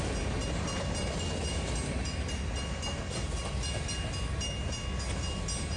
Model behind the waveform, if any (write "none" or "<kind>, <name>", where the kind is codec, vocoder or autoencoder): none